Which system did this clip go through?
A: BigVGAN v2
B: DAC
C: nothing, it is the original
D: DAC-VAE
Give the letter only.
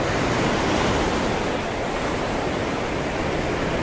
C